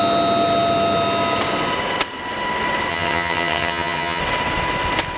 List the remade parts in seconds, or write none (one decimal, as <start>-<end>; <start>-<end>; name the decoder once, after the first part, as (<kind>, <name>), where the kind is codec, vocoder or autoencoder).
2.9-4.2 (vocoder, HiFi-GAN)